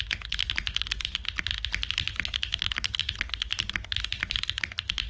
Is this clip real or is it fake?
real